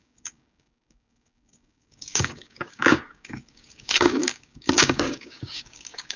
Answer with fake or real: fake